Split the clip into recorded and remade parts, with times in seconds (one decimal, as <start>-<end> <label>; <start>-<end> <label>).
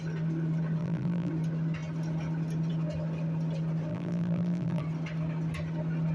0.0-0.8 recorded; 0.8-1.3 remade; 1.3-3.9 recorded; 3.9-4.8 remade; 4.8-6.1 recorded